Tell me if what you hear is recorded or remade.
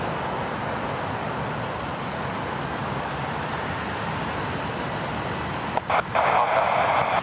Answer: recorded